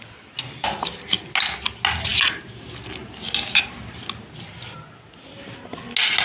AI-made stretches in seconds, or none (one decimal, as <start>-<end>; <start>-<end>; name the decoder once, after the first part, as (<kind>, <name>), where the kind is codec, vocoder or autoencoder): none